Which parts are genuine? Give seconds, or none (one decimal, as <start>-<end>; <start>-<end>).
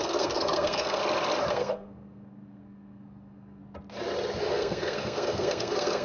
1.0-1.5; 3.6-4.4